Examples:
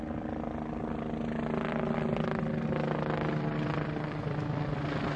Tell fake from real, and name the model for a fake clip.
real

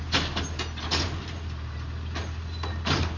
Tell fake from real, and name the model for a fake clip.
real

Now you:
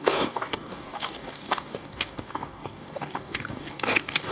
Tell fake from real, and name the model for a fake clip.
fake, codec, DAC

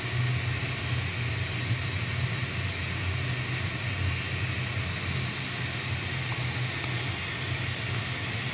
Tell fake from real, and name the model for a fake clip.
real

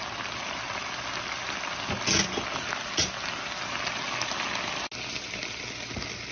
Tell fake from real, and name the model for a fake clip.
real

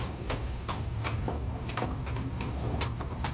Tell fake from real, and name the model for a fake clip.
fake, codec, DAC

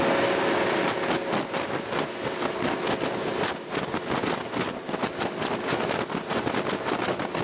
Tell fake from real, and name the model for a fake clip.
real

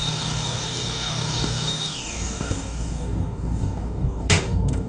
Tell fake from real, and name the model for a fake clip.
fake, codec, DAC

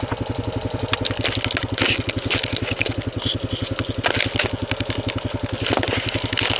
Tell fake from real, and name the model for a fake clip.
real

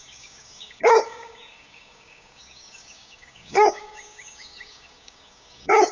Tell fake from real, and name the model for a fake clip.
fake, codec, DAC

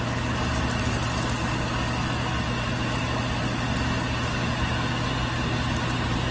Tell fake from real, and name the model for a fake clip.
real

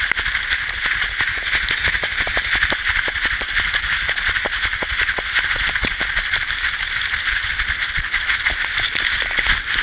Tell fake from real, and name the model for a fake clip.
real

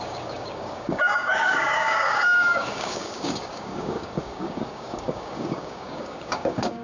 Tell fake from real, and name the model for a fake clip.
fake, codec, DAC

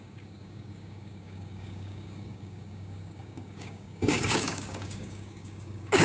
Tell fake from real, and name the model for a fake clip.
fake, codec, DAC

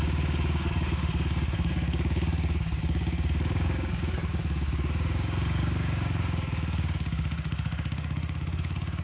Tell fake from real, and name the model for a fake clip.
fake, codec, DAC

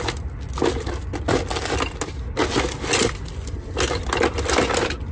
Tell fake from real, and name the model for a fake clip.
real